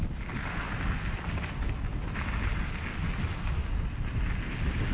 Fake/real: real